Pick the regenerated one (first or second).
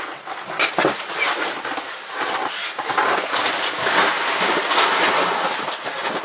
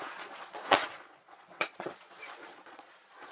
second